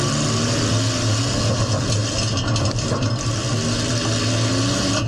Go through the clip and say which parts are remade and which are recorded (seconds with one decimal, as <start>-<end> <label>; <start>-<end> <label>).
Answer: 0.0-5.1 recorded

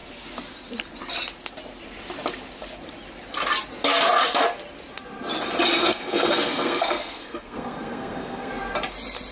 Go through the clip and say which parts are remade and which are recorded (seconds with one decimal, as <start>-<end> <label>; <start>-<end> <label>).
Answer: 0.0-5.8 recorded; 5.8-8.5 remade; 8.5-9.3 recorded

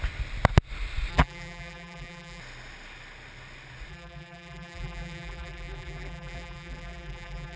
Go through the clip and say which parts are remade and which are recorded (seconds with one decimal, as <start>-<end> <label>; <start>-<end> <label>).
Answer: 0.0-1.1 recorded; 1.1-2.4 remade; 2.4-3.9 recorded; 3.9-7.6 remade

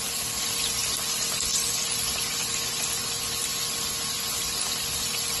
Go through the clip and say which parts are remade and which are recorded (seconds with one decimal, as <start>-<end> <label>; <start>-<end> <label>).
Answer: 0.0-5.4 recorded

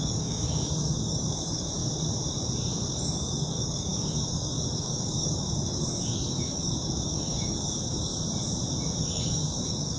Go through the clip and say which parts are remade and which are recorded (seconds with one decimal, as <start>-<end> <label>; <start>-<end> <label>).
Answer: 0.0-1.8 remade; 1.8-3.0 recorded; 3.0-8.1 remade; 8.1-9.0 recorded; 9.0-10.0 remade